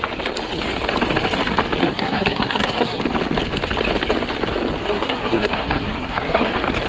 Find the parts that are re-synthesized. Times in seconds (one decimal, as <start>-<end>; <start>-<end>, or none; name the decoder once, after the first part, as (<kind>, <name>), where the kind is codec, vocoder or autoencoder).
1.8-3.0 (codec, SNAC); 4.8-6.5